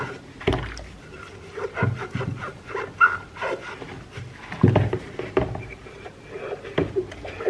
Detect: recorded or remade recorded